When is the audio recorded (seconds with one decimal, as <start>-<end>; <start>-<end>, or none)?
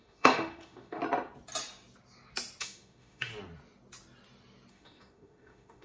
1.0-2.6; 3.3-4.7